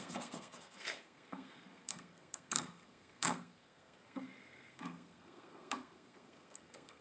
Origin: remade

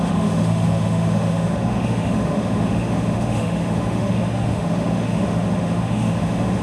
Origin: remade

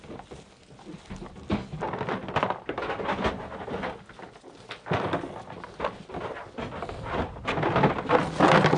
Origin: recorded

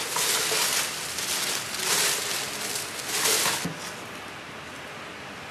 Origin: recorded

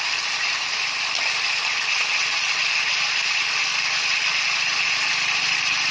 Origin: recorded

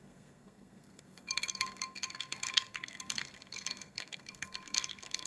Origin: remade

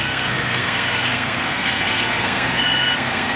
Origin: remade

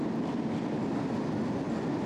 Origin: recorded